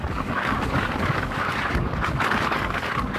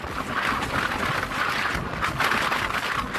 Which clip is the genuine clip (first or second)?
second